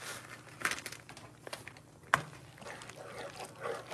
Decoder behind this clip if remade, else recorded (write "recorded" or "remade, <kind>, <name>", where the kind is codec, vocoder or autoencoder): recorded